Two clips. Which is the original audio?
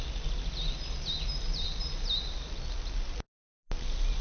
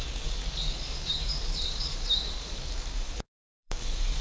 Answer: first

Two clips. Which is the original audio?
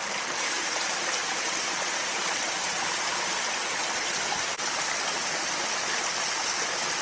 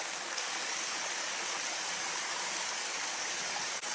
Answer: first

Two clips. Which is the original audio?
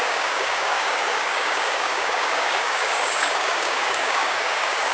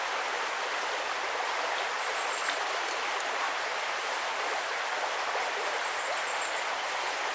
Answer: second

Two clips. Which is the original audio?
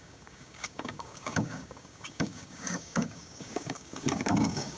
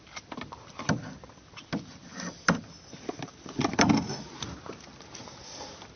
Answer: second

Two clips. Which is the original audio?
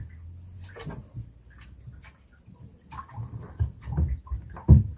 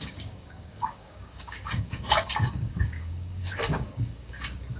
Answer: first